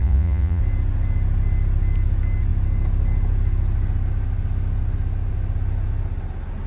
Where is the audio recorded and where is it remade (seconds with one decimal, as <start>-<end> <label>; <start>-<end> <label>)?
0.0-0.6 remade; 0.6-6.7 recorded